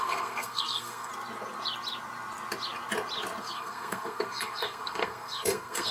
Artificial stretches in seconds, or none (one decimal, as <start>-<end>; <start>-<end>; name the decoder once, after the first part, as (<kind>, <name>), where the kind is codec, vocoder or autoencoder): 0.0-1.1 (codec, SNAC); 3.4-5.9